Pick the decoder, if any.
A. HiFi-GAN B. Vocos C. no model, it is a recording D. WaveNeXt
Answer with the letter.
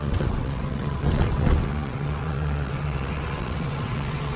D